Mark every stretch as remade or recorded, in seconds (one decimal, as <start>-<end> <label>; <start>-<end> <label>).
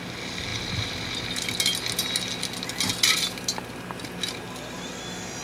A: 0.0-5.4 recorded